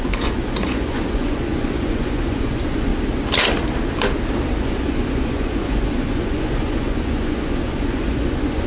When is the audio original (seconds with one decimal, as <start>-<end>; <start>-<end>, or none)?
2.9-4.6